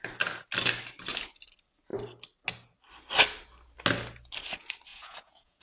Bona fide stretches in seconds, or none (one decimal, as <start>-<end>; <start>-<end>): 0.0-4.9